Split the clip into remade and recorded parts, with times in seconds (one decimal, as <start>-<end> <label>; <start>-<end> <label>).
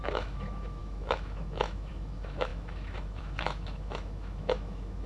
0.0-5.1 remade